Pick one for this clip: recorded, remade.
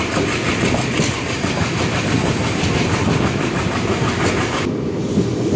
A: recorded